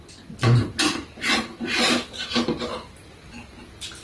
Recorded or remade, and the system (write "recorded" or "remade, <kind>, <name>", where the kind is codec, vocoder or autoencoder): recorded